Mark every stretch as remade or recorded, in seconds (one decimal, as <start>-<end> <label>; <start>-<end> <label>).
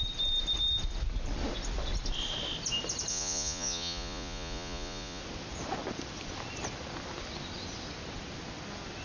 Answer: 0.0-3.1 recorded; 3.1-5.2 remade; 5.2-9.0 recorded